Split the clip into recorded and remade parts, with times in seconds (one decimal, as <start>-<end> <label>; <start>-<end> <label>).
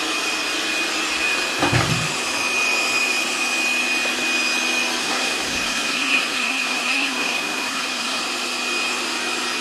0.0-5.0 recorded; 5.0-8.2 remade; 8.2-9.6 recorded